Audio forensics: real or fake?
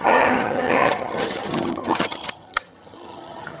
fake